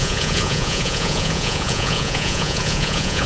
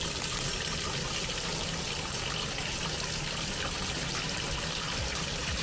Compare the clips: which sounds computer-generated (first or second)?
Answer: first